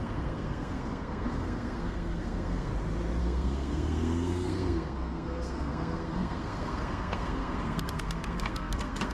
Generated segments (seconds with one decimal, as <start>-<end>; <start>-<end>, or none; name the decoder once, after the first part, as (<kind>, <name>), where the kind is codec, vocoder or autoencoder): 0.0-2.7 (codec, SNAC); 3.2-9.1